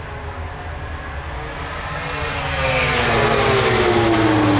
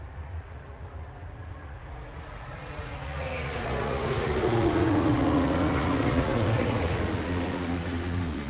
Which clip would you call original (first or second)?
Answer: first